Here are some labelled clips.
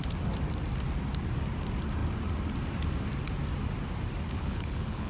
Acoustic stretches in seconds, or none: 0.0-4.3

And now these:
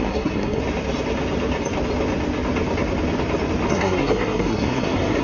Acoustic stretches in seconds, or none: 0.6-3.7